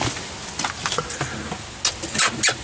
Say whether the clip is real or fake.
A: real